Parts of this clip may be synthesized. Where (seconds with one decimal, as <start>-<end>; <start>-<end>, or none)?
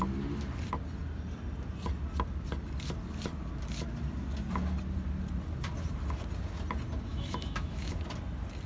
7.1-8.1